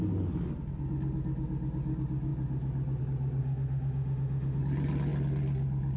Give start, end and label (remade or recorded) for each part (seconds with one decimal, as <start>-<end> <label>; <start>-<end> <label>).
0.0-3.4 recorded; 3.4-4.6 remade; 4.6-6.0 recorded